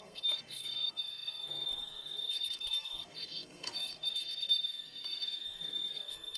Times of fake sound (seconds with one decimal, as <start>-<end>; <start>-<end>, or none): 0.0-6.4